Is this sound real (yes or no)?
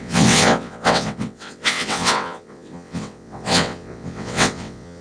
no